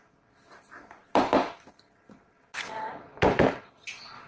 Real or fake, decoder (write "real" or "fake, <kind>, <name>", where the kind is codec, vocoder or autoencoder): real